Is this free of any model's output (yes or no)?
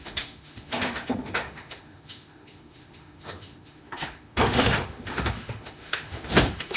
no